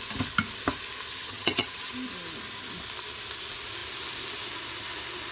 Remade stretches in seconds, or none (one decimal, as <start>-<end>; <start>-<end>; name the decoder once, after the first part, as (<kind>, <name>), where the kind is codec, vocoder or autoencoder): 1.1-1.9 (vocoder, HiFi-GAN)